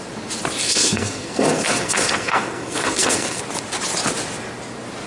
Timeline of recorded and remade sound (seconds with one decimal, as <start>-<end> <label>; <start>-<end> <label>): 0.0-0.6 recorded; 0.6-3.4 remade; 3.4-5.1 recorded